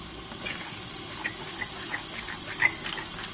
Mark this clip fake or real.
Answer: real